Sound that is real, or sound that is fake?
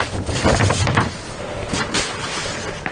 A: real